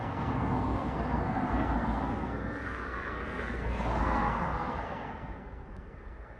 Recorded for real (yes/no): no